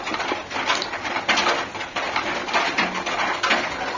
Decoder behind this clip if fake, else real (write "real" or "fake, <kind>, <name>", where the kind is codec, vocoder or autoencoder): real